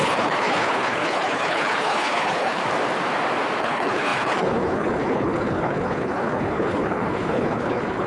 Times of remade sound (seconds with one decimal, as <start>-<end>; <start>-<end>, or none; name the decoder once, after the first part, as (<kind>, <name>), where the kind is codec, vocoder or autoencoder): 0.0-2.6 (codec, HILCodec); 3.6-8.1